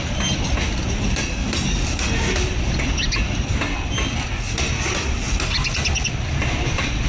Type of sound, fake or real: real